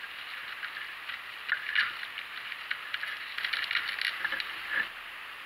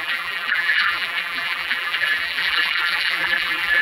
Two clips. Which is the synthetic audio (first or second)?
second